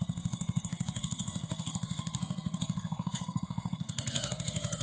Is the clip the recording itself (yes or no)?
no